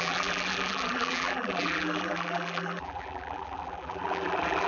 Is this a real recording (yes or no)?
no